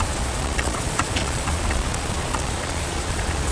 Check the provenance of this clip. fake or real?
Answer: fake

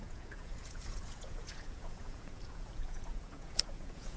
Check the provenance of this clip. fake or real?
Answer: fake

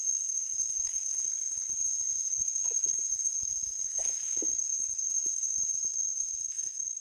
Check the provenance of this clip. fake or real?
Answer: fake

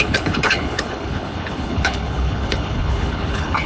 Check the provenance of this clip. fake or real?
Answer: fake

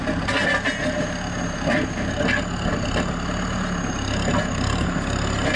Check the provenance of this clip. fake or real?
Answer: real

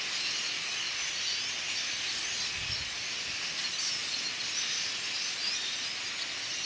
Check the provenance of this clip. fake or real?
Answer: real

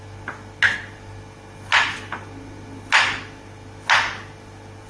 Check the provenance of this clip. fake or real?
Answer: real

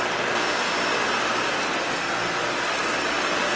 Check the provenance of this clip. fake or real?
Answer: real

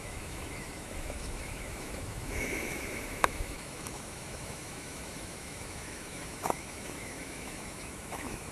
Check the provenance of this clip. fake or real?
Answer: fake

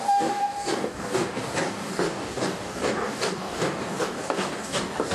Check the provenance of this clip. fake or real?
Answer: fake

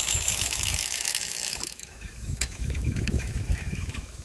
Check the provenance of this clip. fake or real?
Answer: fake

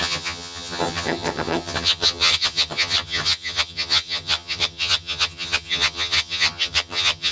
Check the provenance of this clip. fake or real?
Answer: fake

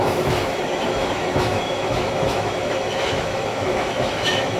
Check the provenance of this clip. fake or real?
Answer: fake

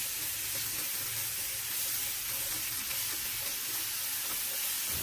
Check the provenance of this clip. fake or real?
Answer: real